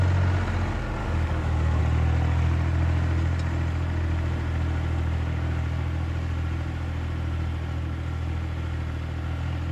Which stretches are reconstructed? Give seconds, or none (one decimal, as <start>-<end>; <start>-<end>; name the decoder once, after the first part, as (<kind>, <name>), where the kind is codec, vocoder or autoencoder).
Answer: 1.0-1.8 (codec, DAC)